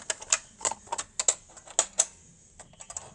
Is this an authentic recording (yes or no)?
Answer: yes